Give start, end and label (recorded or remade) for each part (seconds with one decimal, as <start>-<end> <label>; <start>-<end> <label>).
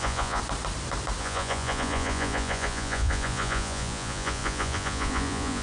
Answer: 0.0-0.4 remade; 0.4-1.2 recorded; 1.2-5.6 remade